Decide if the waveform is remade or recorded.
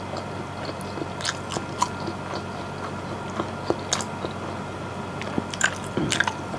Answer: recorded